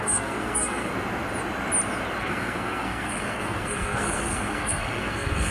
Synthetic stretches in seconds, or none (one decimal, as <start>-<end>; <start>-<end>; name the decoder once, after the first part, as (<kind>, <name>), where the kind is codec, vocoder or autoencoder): 0.0-0.9 (codec, SNAC); 2.2-5.5